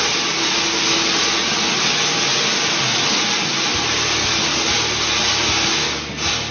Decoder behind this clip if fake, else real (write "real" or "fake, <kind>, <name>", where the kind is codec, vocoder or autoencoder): real